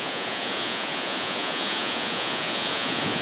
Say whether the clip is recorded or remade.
remade